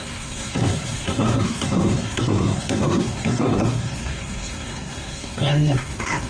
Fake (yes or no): yes